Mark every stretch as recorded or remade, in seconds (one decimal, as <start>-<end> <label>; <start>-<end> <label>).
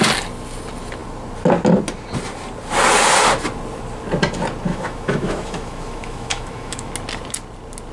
0.0-4.7 recorded; 4.7-6.9 remade; 6.9-7.9 recorded